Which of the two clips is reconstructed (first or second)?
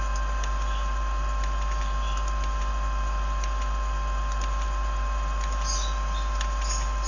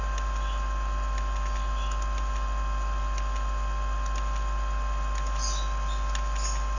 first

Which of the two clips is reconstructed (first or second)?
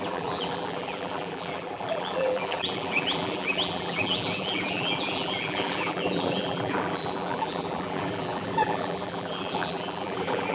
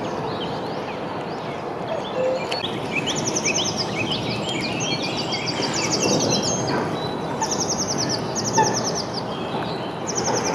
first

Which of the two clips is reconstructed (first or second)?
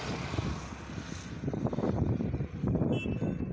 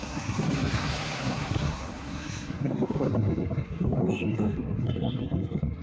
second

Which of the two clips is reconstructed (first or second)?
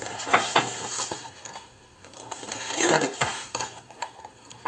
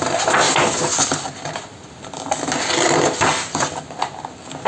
first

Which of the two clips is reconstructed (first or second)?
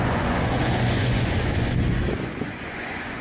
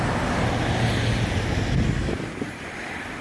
first